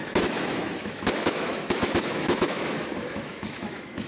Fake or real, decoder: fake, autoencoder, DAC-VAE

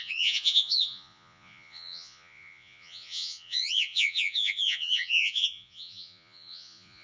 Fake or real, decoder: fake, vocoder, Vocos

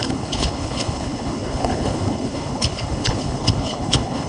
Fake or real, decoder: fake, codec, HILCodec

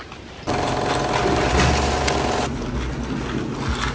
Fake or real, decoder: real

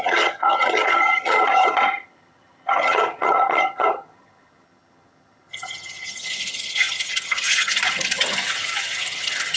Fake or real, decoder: fake, vocoder, HiFi-GAN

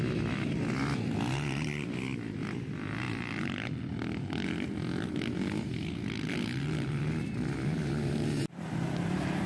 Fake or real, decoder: real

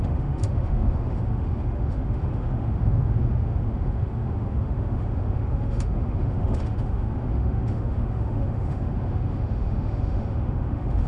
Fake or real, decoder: fake, autoencoder, DAC-VAE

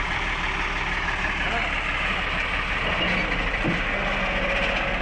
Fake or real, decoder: real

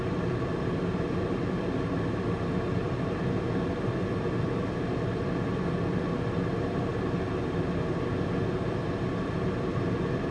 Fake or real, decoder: real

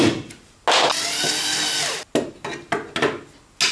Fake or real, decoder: real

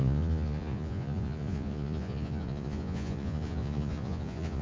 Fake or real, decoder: fake, vocoder, Vocos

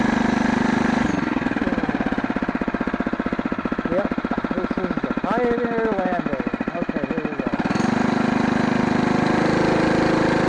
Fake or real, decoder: real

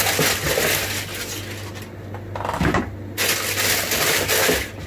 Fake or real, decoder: real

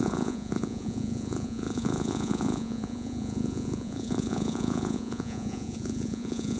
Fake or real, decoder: fake, vocoder, Vocos